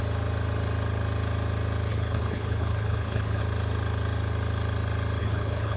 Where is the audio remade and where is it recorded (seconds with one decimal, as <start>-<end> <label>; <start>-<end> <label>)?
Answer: 0.0-1.9 recorded; 1.9-3.4 remade; 3.4-5.2 recorded; 5.2-5.8 remade